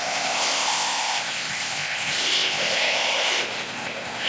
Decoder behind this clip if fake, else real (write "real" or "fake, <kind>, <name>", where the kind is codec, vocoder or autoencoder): fake, codec, ZipCodec